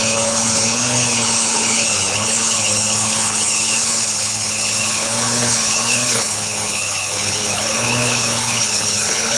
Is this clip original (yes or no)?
no